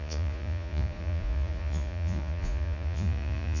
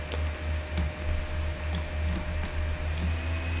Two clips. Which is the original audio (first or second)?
second